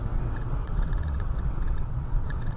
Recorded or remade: remade